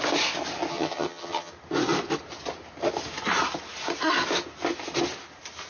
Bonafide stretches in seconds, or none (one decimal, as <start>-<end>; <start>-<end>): 0.0-0.7; 1.5-5.7

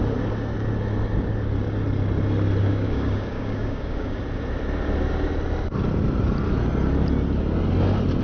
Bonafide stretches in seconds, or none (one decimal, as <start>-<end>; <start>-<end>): 0.0-2.6; 4.2-8.2

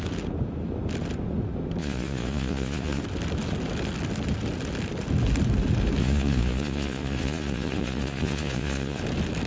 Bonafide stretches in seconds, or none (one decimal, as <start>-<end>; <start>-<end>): 0.0-1.8; 3.0-6.0; 9.0-9.5

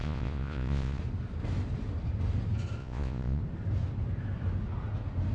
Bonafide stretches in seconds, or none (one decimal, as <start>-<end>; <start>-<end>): 1.0-2.8; 3.4-5.3

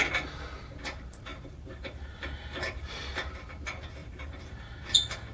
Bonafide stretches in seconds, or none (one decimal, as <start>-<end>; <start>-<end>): 0.0-1.3; 2.9-4.0; 4.6-5.3